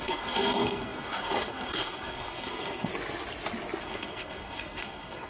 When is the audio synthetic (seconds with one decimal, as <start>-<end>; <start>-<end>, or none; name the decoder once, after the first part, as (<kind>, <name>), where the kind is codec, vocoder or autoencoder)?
0.0-2.9 (codec, SNAC); 3.8-5.3